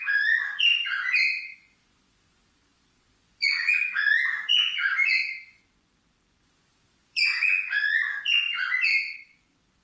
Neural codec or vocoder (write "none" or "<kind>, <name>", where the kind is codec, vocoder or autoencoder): vocoder, Vocos